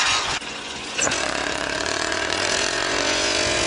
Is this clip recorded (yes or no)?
no